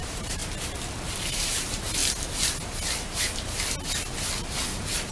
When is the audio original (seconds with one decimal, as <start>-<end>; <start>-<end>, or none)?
0.4-1.1; 2.0-5.1